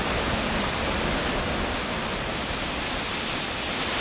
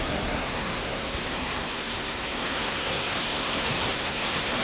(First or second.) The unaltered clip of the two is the first